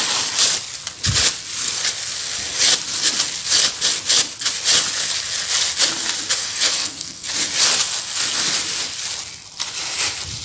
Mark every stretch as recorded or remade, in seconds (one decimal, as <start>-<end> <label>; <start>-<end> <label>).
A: 0.0-6.4 recorded; 6.4-7.3 remade; 7.3-10.4 recorded